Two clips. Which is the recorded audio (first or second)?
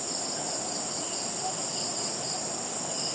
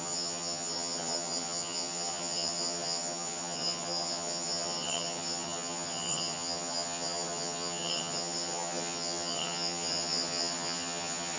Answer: first